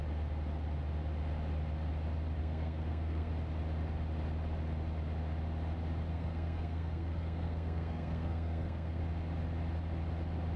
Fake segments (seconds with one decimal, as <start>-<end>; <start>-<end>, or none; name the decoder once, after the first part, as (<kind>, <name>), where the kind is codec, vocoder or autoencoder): 2.4-3.3 (codec, SNAC); 6.1-9.0